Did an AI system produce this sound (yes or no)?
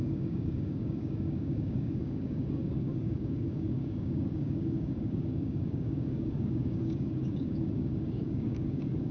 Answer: yes